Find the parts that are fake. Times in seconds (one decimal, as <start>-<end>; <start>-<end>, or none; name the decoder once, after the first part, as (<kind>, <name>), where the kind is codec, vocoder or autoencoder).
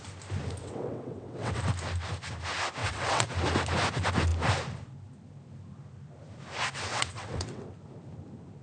0.6-1.6 (vocoder, WaveNeXt); 2.8-3.3; 6.9-7.6